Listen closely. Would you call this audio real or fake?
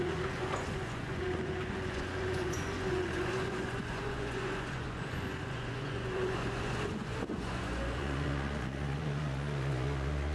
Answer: fake